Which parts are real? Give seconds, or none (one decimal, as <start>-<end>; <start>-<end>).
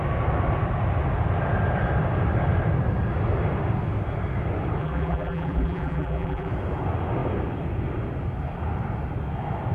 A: 0.0-4.8; 6.5-9.7